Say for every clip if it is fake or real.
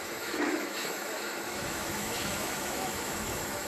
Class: fake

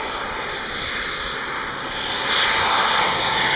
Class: real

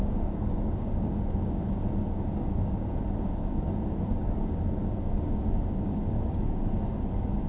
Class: fake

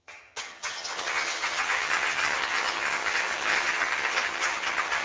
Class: fake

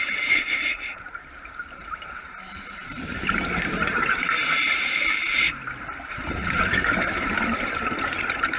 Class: fake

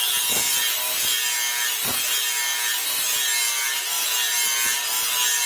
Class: real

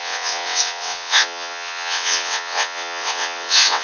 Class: fake